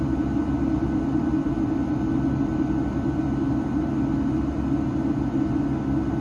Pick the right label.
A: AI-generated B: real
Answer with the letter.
B